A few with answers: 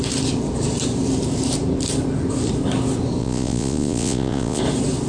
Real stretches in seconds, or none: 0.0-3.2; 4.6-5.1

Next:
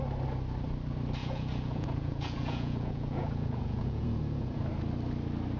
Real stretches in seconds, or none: 0.0-1.2; 4.6-5.6